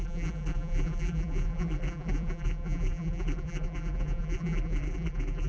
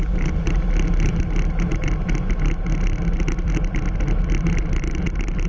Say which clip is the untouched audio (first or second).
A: second